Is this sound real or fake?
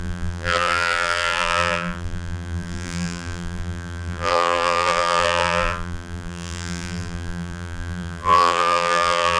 fake